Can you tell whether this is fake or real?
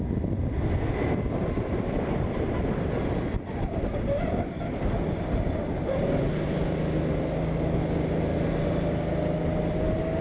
real